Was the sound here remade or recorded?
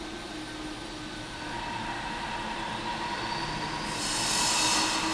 recorded